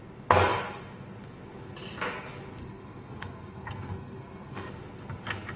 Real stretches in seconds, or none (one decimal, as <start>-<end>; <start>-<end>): 0.0-2.6; 4.7-5.6